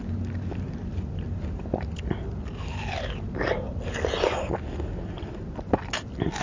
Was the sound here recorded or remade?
recorded